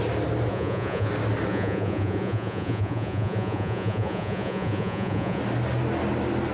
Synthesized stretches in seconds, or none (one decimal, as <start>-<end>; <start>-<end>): 0.5-1.1; 1.5-5.4